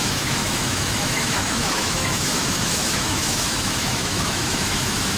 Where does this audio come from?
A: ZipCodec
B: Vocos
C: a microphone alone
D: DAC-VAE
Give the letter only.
D